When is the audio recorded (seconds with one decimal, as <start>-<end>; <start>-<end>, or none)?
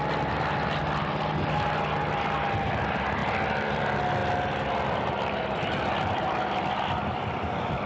0.0-7.9